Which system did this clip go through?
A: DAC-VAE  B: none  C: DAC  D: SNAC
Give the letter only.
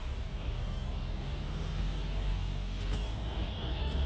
C